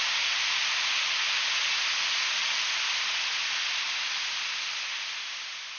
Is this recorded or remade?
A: recorded